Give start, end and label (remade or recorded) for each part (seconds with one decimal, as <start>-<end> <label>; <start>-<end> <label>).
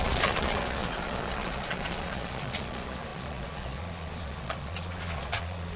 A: 0.0-5.8 remade